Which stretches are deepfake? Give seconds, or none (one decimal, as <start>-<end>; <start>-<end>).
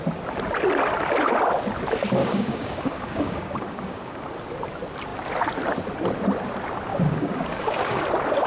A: 2.2-4.2; 6.9-8.0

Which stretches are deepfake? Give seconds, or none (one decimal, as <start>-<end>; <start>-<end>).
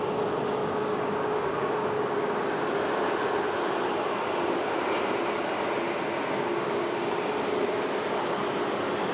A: 0.6-2.3; 6.5-7.3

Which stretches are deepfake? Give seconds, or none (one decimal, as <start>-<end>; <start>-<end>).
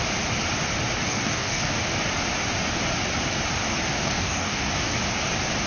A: 1.1-1.7; 4.0-4.7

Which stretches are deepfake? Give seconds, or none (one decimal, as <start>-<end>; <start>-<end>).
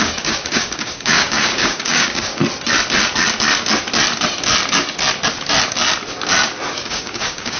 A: 0.0-2.4; 6.7-7.6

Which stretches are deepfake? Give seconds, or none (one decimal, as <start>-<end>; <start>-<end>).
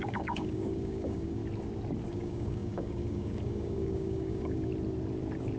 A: 0.0-1.4; 2.1-4.7